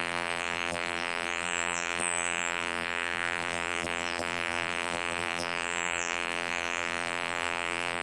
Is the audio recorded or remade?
remade